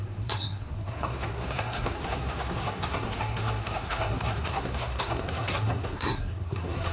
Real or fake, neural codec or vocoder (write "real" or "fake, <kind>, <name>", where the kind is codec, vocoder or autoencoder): fake, codec, SNAC